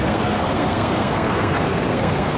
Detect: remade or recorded remade